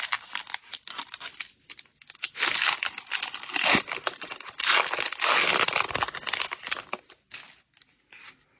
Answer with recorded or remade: recorded